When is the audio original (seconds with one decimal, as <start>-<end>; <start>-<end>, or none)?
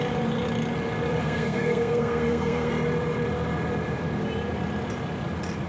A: 0.0-1.2; 2.7-5.7